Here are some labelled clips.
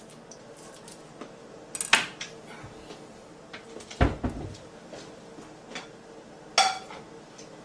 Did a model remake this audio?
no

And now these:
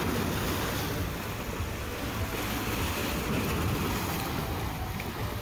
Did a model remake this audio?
no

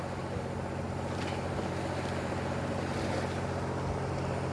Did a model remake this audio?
no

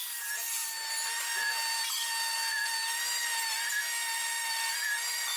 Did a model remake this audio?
no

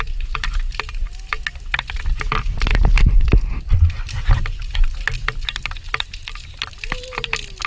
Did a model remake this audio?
yes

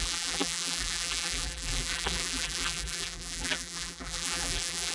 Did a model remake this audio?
yes